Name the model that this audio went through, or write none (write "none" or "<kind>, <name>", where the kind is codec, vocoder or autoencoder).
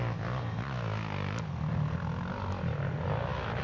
none